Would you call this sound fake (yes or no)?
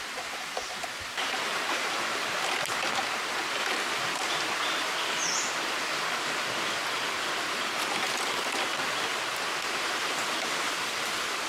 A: no